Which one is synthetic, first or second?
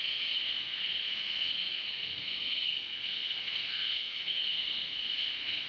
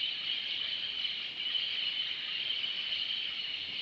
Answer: first